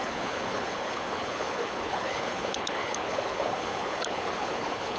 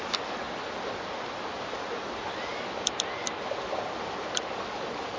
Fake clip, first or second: first